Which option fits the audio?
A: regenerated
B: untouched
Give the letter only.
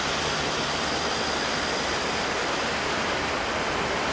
B